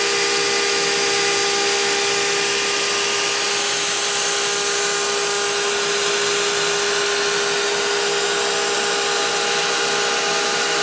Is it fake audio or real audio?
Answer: real